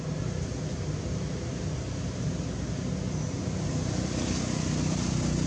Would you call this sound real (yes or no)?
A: yes